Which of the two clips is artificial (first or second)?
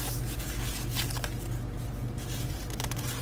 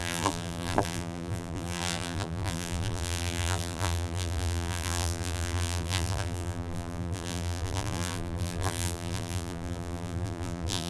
second